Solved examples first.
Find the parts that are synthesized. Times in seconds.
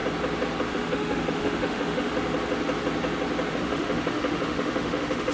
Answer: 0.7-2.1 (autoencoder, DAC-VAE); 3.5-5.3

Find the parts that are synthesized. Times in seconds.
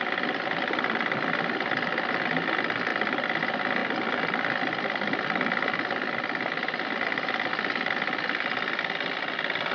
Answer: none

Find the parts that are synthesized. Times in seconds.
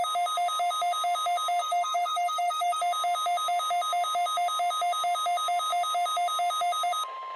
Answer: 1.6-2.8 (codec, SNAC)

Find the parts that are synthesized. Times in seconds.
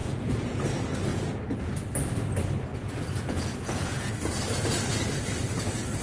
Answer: 0.0-0.6 (vocoder, Vocos); 1.1-1.8; 2.7-4.1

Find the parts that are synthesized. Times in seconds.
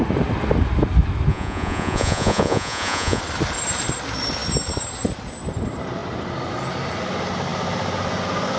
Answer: 1.3-3.2 (vocoder, Vocos)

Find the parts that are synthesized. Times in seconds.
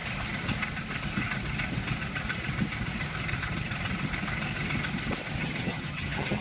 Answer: 5.4-6.4 (vocoder, HiFi-GAN)